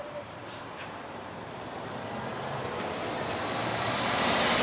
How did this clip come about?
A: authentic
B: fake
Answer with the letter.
B